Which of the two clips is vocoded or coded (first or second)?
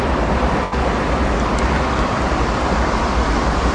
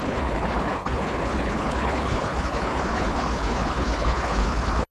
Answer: second